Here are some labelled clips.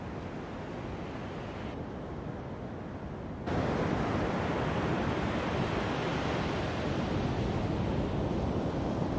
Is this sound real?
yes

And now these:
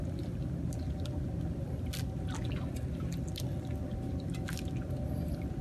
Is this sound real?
yes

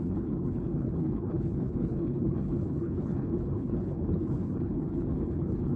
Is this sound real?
no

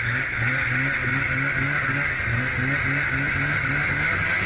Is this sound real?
yes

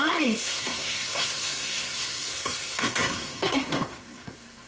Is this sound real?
no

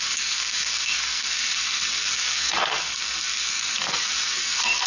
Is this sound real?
no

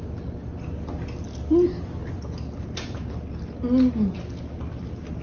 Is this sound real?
yes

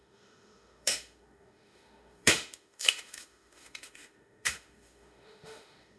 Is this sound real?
no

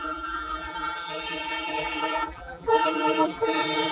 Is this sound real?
no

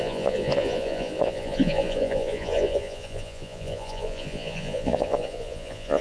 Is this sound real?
no